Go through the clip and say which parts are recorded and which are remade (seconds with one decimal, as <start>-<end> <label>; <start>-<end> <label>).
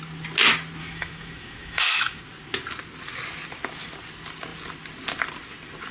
0.0-0.8 recorded; 0.8-2.2 remade; 2.2-5.9 recorded